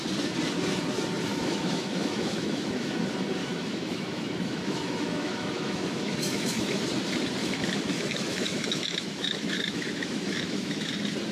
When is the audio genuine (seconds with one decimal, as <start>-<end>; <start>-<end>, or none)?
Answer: 0.0-1.3; 3.0-3.4; 6.8-7.4; 10.9-11.3